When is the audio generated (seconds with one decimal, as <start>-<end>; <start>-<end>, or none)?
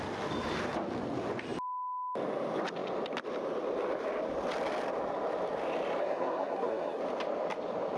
6.0-7.0